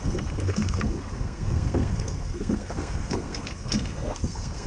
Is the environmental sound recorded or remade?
remade